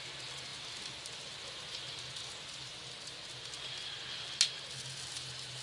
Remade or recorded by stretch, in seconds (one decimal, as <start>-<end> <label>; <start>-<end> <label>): 0.0-5.6 recorded